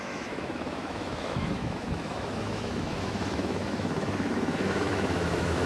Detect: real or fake fake